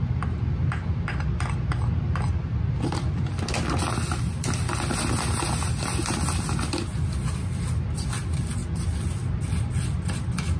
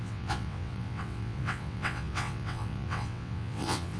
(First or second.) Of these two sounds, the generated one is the second